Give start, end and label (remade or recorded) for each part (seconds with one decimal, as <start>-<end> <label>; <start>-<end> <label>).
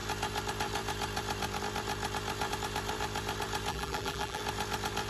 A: 0.0-3.7 recorded; 3.7-4.4 remade; 4.4-5.1 recorded